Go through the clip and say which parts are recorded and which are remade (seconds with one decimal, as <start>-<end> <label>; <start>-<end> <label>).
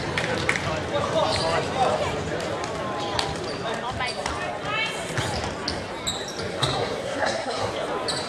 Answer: 0.0-6.5 recorded; 6.5-7.7 remade; 7.7-8.3 recorded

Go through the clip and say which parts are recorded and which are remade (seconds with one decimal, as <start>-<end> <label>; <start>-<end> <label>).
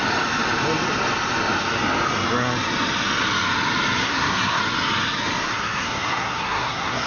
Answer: 0.0-4.0 recorded; 4.0-4.6 remade; 4.6-5.5 recorded; 5.5-7.1 remade